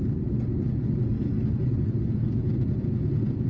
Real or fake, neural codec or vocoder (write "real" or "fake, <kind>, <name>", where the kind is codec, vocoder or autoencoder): real